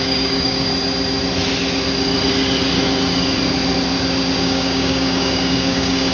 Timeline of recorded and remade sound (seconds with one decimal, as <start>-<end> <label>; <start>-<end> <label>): 0.0-0.7 remade; 0.7-4.4 recorded; 4.4-6.1 remade